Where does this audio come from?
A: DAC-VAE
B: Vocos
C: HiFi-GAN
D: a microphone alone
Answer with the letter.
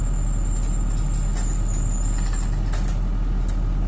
D